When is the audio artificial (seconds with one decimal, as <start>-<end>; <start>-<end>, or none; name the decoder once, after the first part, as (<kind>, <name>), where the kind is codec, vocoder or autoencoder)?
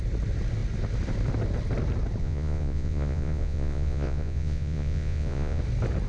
2.2-5.6 (vocoder, Vocos)